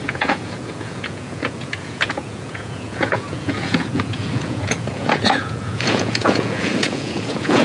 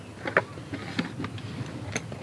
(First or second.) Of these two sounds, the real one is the second